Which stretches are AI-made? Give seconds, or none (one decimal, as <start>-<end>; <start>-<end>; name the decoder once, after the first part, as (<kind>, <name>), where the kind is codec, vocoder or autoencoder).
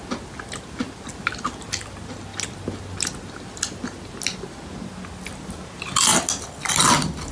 none